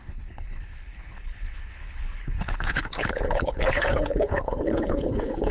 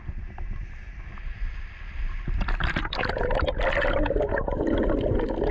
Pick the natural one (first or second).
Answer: second